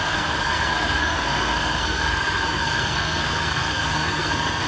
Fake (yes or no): yes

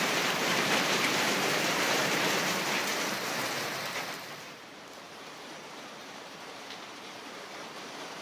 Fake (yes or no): yes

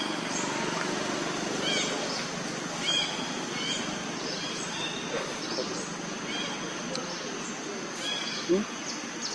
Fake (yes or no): no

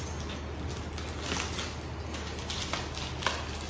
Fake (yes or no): no